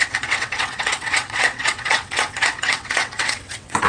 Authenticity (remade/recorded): remade